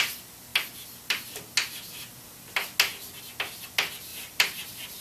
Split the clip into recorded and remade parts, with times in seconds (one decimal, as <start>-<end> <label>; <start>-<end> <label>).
0.0-4.1 recorded; 4.1-5.0 remade